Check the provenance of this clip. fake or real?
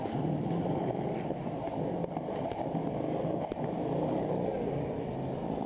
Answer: real